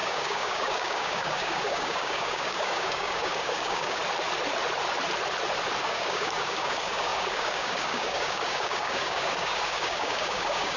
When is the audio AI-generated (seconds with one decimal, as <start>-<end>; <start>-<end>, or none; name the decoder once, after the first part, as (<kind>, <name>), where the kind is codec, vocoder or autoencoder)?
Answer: 0.0-4.0 (codec, DAC); 5.8-10.8